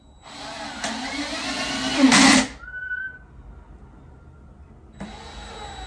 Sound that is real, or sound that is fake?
real